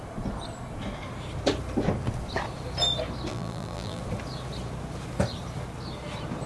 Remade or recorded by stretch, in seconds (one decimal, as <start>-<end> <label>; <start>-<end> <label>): 0.0-3.3 recorded; 3.3-4.0 remade; 4.0-6.5 recorded